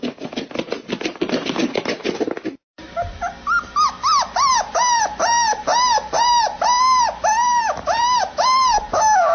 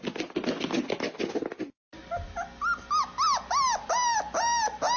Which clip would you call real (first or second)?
second